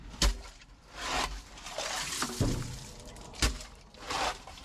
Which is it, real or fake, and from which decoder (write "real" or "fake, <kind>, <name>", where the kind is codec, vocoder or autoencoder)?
fake, vocoder, BigVGAN v2